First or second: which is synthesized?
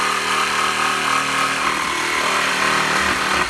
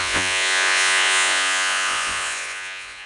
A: second